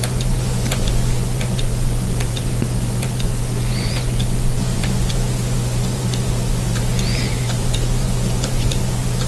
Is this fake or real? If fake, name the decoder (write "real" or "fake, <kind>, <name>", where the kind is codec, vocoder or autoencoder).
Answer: fake, vocoder, Vocos